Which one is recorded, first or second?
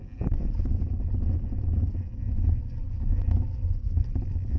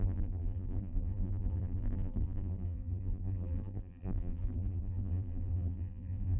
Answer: first